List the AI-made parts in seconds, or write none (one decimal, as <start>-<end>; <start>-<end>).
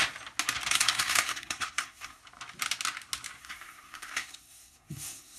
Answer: 0.7-2.2; 3.4-5.4